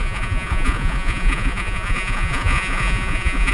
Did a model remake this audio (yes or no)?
yes